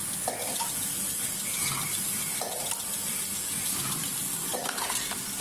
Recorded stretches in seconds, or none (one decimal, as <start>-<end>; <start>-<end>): 0.0-4.5